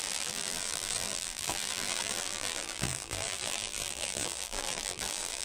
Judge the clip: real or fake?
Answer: fake